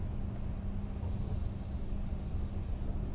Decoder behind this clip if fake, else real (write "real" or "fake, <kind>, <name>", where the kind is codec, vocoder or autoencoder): real